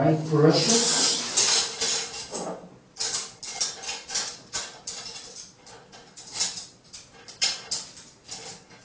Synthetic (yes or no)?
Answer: no